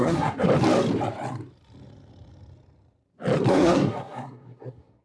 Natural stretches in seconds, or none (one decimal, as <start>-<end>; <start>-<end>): 0.5-3.5